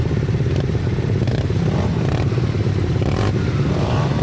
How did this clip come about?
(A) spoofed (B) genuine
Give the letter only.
A